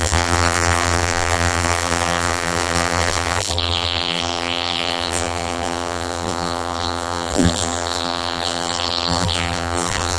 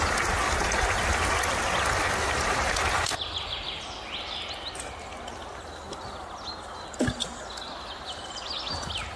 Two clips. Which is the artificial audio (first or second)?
first